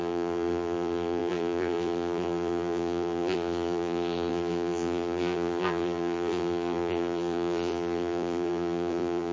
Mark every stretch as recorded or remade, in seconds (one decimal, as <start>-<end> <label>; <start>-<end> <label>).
0.0-9.3 remade